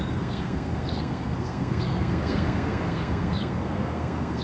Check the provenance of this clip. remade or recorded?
remade